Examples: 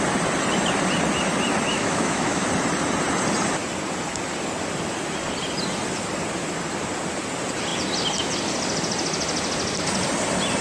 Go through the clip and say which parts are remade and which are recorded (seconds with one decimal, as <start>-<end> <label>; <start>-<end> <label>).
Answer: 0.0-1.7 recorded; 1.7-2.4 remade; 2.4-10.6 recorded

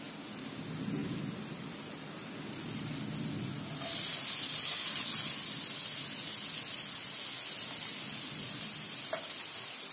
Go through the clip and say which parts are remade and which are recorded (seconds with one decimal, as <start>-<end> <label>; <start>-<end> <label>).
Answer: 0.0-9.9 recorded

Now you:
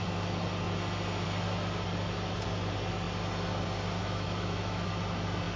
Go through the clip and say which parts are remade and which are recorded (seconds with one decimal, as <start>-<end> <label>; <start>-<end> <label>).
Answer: 0.0-4.0 recorded; 4.0-4.9 remade; 4.9-5.6 recorded

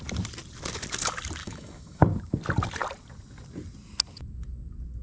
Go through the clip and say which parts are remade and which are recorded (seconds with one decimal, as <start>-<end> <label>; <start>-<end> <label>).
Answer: 0.0-1.4 recorded; 1.4-2.0 remade; 2.0-5.0 recorded